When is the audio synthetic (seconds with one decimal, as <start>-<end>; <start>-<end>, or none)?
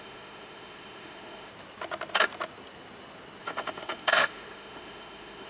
0.0-1.5; 3.4-5.5